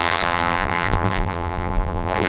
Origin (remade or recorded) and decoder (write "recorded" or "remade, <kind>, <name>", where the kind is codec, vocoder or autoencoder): remade, vocoder, BigVGAN v2